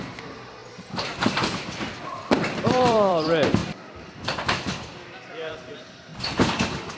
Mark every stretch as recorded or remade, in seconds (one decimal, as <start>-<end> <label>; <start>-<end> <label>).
0.0-6.1 remade; 6.1-7.0 recorded